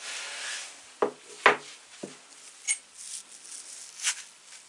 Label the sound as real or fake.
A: real